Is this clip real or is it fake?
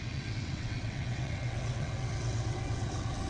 fake